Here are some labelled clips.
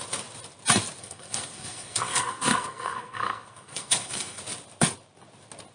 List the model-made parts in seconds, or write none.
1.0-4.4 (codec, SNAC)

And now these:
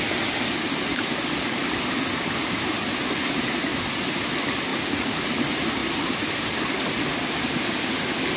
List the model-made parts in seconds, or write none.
4.7-5.2 (vocoder, Vocos)

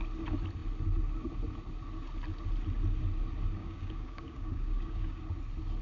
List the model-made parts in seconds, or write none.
3.6-5.2 (codec, DAC)

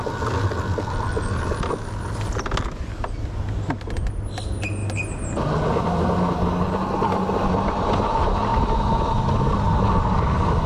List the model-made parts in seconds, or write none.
none

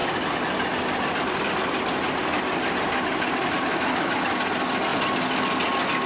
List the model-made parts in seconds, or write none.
none

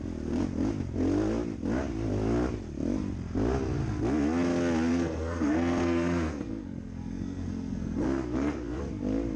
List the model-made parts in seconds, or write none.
4.9-8.8 (codec, SNAC)

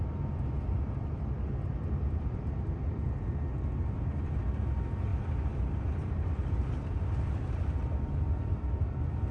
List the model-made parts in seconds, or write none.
0.7-4.4 (vocoder, BigVGAN v2); 5.1-7.7